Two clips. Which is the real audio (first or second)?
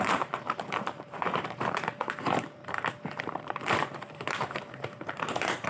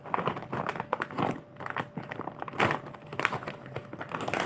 second